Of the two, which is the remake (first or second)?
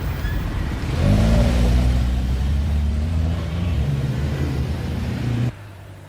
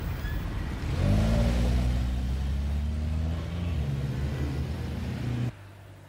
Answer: first